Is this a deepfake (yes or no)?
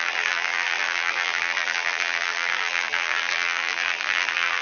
yes